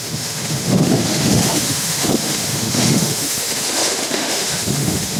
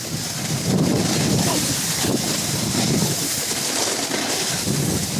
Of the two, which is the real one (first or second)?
second